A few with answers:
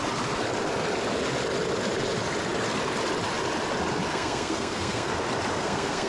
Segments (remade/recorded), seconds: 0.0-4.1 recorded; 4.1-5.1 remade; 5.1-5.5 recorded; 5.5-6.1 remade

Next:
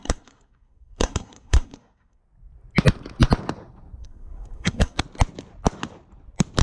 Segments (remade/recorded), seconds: 0.0-2.2 remade; 2.2-4.0 recorded; 4.0-5.0 remade; 5.0-6.6 recorded

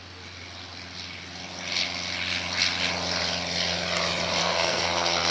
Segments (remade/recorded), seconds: 0.0-4.4 recorded; 4.4-5.3 remade

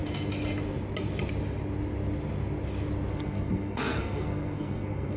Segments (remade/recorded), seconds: 0.0-3.1 recorded; 3.1-5.2 remade